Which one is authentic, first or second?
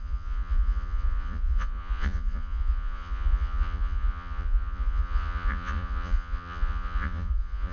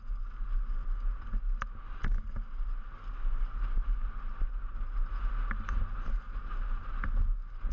second